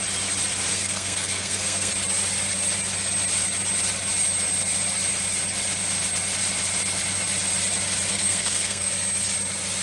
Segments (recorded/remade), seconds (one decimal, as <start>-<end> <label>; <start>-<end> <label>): 0.0-0.7 recorded; 0.7-1.9 remade; 1.9-8.1 recorded; 8.1-8.9 remade; 8.9-9.8 recorded